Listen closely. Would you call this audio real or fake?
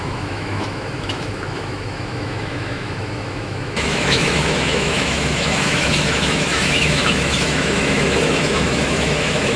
fake